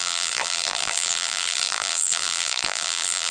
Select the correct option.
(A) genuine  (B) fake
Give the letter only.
B